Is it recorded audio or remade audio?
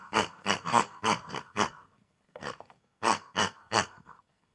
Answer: remade